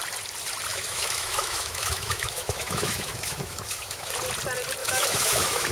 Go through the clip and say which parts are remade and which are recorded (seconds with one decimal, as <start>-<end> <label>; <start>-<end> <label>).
0.0-0.7 recorded; 0.7-4.1 remade; 4.1-4.8 recorded; 4.8-5.7 remade